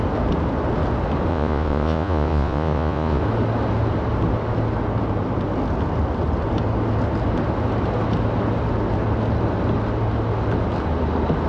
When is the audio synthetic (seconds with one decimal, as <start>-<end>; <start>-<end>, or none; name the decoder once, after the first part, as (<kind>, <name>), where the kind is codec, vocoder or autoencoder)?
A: 1.3-3.2 (vocoder, Vocos)